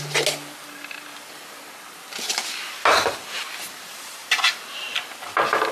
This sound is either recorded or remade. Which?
recorded